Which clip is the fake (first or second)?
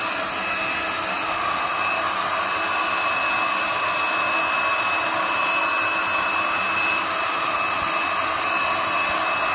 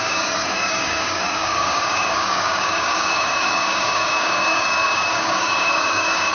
second